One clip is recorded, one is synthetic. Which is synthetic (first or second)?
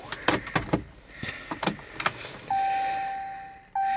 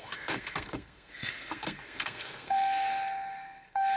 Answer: second